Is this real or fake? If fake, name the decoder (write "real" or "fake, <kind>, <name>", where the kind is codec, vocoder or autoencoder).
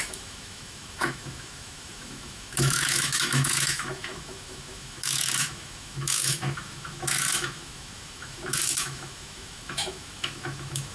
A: fake, autoencoder, DAC-VAE